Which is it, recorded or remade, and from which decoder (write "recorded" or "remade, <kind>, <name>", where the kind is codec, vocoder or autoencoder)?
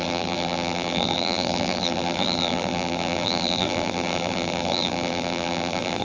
remade, vocoder, BigVGAN v2